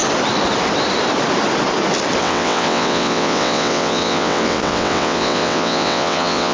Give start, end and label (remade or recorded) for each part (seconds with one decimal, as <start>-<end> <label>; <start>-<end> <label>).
0.0-2.2 recorded; 2.2-6.5 remade